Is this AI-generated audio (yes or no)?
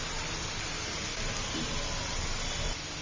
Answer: no